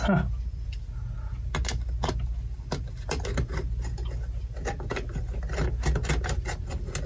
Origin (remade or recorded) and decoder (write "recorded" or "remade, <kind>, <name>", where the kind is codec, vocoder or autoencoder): recorded